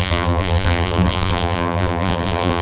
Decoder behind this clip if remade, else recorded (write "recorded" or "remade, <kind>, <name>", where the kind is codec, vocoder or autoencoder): remade, vocoder, BigVGAN v2